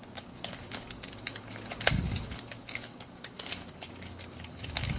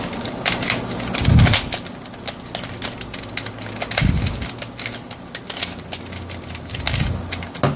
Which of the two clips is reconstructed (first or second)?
first